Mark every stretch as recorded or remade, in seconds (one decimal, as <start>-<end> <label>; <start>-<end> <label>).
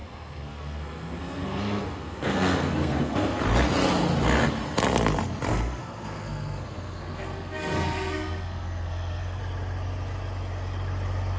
0.0-3.4 remade; 3.4-5.5 recorded; 5.5-9.4 remade; 9.4-11.4 recorded